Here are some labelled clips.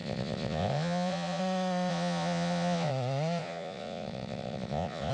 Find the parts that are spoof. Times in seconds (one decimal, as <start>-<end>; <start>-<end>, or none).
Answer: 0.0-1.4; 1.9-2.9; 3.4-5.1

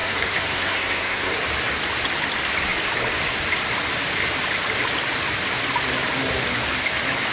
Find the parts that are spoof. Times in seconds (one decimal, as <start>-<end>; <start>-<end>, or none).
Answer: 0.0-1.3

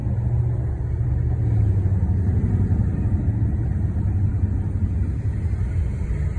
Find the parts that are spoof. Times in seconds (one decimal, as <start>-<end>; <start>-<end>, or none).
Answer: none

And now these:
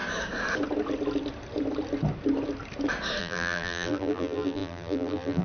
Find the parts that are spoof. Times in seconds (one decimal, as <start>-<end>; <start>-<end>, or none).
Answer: 3.2-5.4

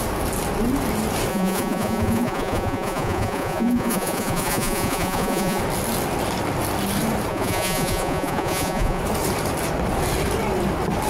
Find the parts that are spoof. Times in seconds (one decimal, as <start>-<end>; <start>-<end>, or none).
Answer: 1.3-5.6; 7.3-9.0